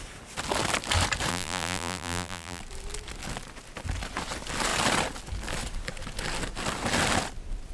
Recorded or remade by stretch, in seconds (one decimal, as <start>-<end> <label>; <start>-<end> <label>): 0.0-1.3 recorded; 1.3-2.6 remade; 2.6-7.7 recorded